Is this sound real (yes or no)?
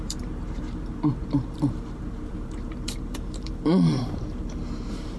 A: no